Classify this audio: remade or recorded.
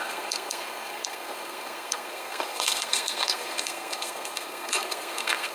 remade